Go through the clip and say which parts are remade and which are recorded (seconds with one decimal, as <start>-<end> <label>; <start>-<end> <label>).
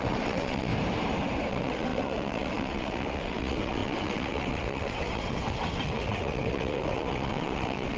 0.0-0.7 remade; 0.7-1.5 recorded; 1.5-8.0 remade